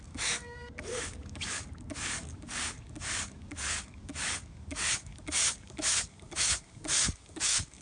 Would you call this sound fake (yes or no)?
yes